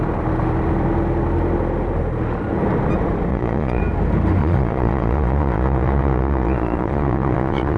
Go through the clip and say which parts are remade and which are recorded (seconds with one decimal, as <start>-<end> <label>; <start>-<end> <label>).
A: 0.0-3.3 recorded; 3.3-3.8 remade; 3.8-4.4 recorded; 4.4-7.8 remade